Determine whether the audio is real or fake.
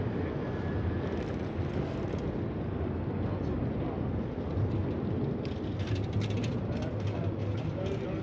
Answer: real